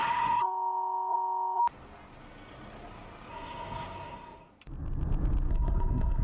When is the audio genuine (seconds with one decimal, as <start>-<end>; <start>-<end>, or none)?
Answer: 1.6-3.3; 4.5-5.5